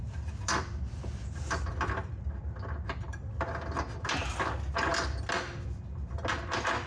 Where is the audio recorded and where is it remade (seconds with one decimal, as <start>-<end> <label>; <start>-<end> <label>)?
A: 0.0-6.9 recorded